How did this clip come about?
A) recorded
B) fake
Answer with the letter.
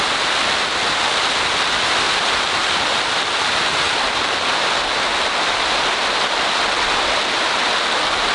A